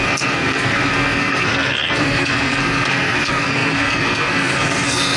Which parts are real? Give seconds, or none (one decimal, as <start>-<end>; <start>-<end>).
none